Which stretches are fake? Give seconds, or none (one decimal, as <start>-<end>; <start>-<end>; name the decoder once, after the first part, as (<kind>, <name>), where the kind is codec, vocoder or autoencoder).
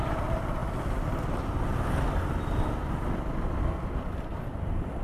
none